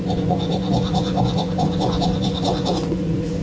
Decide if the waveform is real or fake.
fake